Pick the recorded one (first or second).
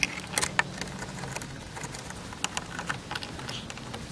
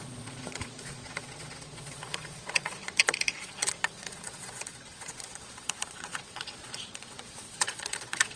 first